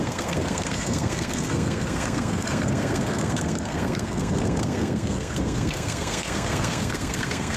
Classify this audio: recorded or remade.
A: remade